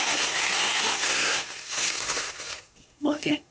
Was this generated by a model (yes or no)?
yes